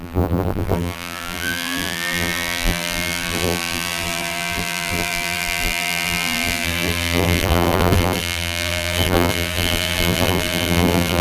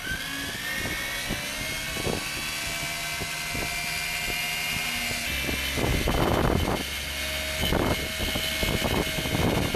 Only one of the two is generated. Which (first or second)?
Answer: first